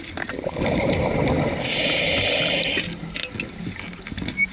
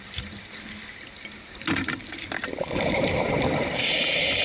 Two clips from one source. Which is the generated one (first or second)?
second